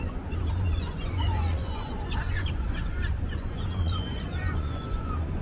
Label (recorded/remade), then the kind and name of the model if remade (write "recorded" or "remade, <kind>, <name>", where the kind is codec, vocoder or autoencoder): remade, vocoder, Vocos